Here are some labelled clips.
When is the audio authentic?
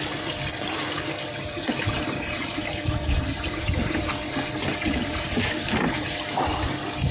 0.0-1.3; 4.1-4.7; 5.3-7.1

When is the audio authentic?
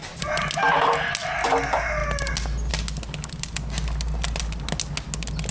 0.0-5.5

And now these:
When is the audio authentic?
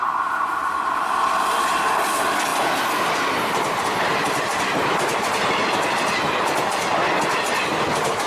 0.0-8.3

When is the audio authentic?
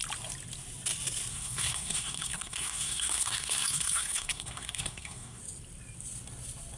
0.0-1.3; 5.4-6.8